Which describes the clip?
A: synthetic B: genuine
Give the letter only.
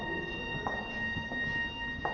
B